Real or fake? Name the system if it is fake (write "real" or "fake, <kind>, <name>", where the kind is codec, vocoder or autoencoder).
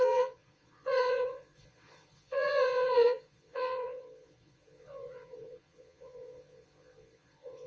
fake, vocoder, Vocos